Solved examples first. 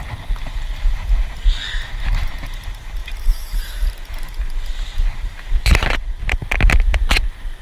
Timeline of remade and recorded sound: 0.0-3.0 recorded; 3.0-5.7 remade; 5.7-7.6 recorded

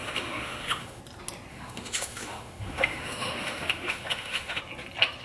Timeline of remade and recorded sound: 0.0-1.0 remade; 1.0-1.5 recorded; 1.5-4.6 remade; 4.6-5.2 recorded

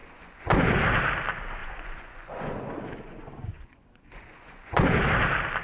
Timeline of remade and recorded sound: 0.0-0.8 remade; 0.8-1.6 recorded; 1.6-5.0 remade; 5.0-5.6 recorded

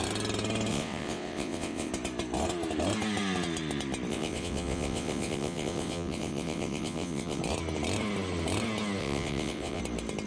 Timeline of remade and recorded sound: 0.0-0.7 recorded; 0.7-1.9 remade; 1.9-4.1 recorded; 4.1-7.4 remade; 7.4-9.0 recorded; 9.0-9.8 remade; 9.8-10.3 recorded